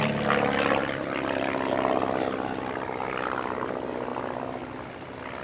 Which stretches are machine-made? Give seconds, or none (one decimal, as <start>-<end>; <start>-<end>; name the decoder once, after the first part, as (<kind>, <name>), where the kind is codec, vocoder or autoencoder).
none